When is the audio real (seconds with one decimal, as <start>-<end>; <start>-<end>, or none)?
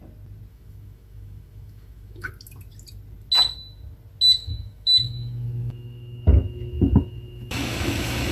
0.0-0.5; 2.3-4.4